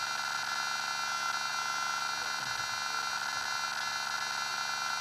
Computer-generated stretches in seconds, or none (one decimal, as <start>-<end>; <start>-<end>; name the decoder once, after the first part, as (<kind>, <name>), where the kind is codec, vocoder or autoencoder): none